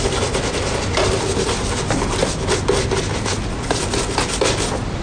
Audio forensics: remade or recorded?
recorded